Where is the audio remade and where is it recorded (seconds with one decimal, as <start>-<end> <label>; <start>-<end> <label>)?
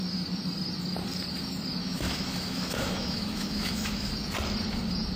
0.0-1.8 recorded; 1.8-4.1 remade; 4.1-5.2 recorded